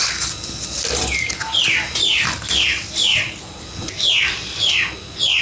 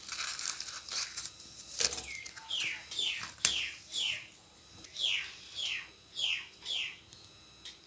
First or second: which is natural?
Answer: second